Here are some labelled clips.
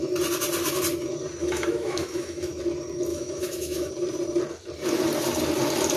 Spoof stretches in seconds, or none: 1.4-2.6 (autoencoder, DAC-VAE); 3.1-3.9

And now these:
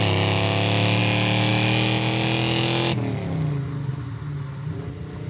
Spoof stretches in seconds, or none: none